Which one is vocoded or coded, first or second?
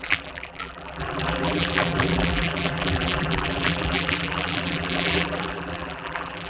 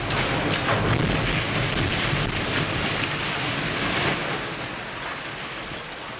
first